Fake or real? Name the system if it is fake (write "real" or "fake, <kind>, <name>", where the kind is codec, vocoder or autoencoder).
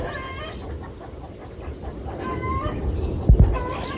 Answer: real